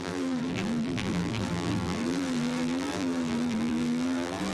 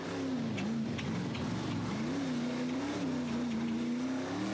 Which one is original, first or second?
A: second